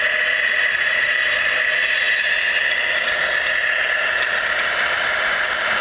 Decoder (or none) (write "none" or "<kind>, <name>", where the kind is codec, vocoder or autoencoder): none